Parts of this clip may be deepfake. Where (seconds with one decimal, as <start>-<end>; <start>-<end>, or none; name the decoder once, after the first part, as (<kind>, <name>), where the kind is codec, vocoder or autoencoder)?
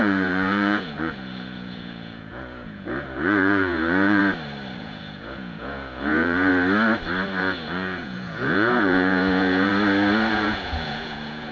0.0-4.2 (vocoder, Vocos); 4.8-6.5; 7.4-9.7; 10.3-11.5